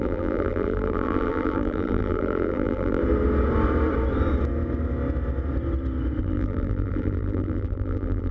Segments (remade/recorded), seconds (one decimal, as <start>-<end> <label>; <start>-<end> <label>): 0.0-3.0 remade; 3.0-6.2 recorded; 6.2-8.3 remade